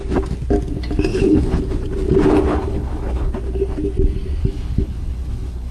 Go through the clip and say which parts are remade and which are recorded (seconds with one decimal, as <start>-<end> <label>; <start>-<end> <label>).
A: 0.0-1.1 recorded; 1.1-1.6 remade; 1.6-2.5 recorded; 2.5-3.3 remade; 3.3-4.4 recorded; 4.4-5.7 remade